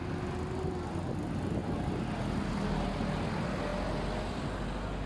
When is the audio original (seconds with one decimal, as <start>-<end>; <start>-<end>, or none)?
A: 0.0-5.1